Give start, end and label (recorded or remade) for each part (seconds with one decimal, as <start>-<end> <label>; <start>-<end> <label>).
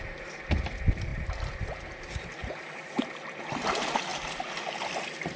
0.0-1.1 recorded; 1.1-3.0 remade; 3.0-5.4 recorded